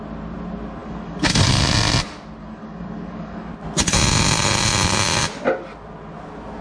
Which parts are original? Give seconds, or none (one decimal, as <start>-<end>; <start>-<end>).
0.0-0.8; 1.6-2.4; 3.5-6.6